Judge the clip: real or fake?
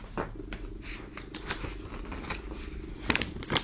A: real